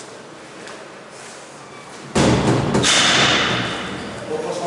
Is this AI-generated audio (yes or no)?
no